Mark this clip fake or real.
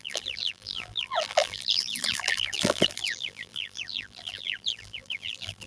fake